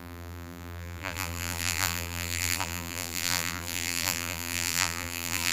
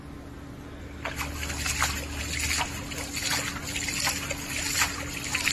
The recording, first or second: second